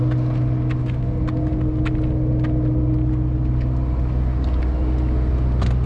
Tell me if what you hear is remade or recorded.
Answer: recorded